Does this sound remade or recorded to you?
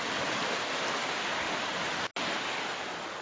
recorded